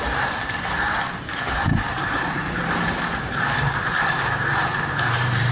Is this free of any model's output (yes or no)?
no